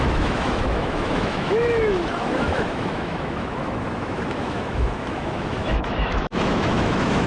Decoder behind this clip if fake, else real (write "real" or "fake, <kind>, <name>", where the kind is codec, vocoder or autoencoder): fake, autoencoder, DAC-VAE